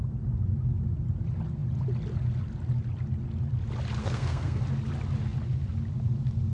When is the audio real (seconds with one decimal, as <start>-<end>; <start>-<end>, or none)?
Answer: 0.0-4.0; 4.6-6.5